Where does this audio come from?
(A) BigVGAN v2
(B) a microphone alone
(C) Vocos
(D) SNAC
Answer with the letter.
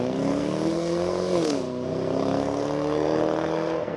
D